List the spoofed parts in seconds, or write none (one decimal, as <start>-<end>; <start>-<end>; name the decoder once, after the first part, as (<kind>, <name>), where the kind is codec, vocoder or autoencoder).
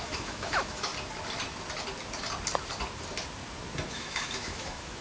0.0-0.9 (autoencoder, DAC-VAE); 3.9-5.0